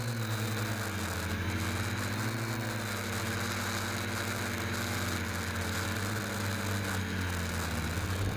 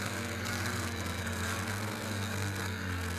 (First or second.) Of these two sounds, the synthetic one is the second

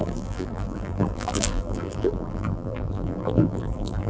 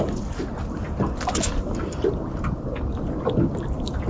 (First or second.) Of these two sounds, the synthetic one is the first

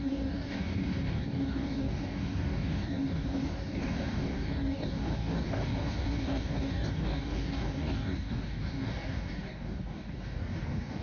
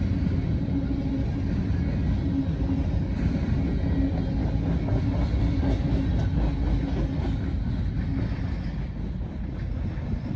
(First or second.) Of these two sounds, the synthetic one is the first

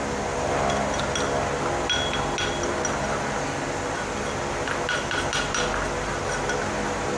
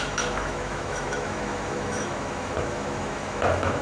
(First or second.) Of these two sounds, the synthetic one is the second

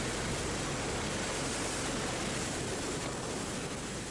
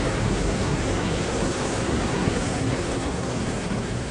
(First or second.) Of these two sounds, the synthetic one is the second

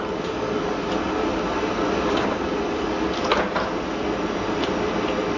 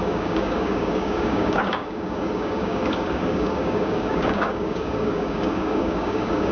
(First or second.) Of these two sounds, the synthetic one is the second